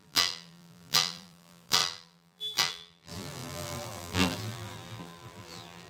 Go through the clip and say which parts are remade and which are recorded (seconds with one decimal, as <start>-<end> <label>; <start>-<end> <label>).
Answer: 0.0-5.9 remade